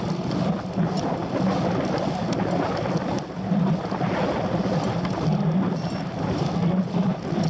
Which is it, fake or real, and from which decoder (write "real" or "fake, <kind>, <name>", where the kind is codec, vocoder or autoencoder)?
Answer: real